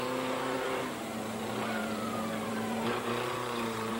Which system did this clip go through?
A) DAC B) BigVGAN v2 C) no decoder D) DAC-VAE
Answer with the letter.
B